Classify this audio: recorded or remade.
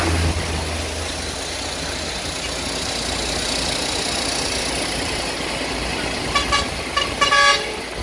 recorded